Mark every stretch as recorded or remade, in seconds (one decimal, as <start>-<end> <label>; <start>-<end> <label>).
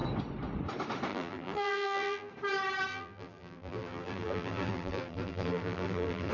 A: 0.0-1.1 recorded; 1.1-2.3 remade; 2.3-2.9 recorded; 2.9-6.3 remade